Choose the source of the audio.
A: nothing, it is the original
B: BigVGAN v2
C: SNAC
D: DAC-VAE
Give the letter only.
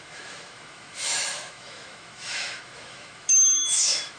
D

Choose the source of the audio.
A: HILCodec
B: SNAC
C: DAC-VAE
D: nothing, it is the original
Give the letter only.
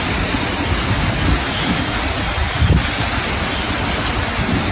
D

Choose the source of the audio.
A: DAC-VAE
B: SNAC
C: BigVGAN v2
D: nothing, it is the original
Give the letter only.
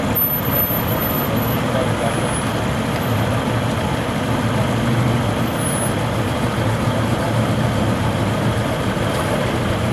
D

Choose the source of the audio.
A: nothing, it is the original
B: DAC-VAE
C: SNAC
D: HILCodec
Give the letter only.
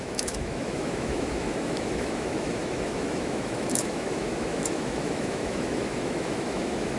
B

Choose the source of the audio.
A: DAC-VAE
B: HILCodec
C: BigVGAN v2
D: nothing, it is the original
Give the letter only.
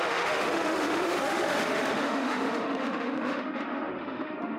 A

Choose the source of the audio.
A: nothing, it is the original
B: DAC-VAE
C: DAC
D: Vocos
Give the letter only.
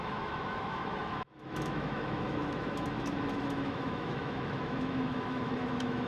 B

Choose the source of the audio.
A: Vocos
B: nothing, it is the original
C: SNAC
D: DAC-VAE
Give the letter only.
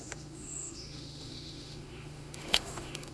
D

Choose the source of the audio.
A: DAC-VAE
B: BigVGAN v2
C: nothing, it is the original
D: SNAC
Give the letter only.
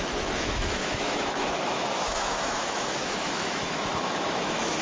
A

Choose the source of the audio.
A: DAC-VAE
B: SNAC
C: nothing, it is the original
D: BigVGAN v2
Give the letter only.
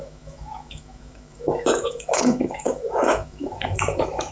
A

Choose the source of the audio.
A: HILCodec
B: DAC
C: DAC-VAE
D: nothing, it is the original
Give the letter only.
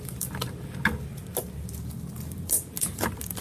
D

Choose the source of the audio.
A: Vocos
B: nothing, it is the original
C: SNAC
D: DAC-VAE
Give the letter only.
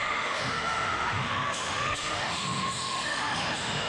D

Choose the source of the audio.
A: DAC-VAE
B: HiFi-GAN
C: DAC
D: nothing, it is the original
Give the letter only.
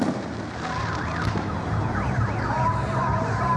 D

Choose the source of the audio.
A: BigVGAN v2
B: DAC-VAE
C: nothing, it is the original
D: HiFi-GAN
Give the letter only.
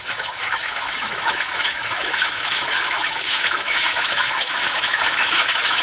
B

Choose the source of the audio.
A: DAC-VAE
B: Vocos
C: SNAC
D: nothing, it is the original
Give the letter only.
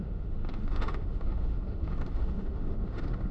A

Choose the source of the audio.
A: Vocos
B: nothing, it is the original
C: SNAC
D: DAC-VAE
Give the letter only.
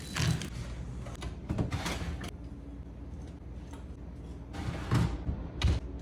B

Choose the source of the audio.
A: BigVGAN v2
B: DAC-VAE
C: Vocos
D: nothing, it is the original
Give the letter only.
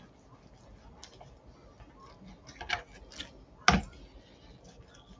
D